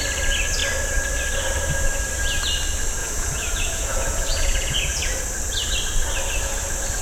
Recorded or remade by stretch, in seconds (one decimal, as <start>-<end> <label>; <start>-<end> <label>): 0.0-3.0 recorded; 3.0-5.2 remade; 5.2-7.0 recorded